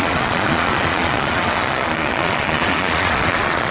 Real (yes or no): no